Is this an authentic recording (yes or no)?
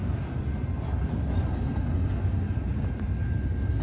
yes